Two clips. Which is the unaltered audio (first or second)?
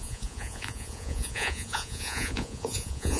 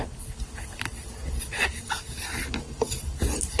second